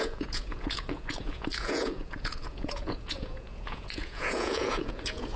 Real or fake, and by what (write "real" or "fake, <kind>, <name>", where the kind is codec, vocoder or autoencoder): fake, vocoder, Vocos